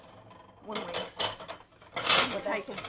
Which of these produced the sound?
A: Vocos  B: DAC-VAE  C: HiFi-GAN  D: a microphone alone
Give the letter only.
D